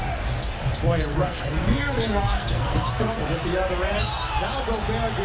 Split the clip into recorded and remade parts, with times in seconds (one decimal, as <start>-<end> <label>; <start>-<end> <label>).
0.0-1.1 recorded; 1.1-3.2 remade; 3.2-5.2 recorded